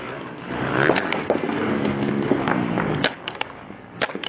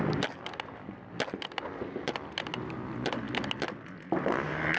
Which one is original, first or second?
second